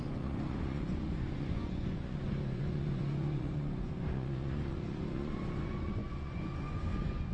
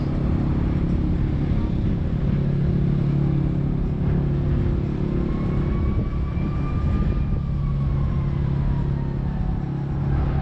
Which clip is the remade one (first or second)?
first